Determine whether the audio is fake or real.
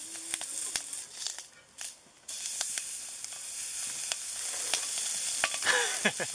real